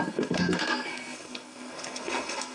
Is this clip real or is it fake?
fake